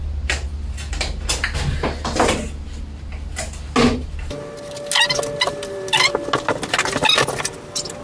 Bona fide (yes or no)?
yes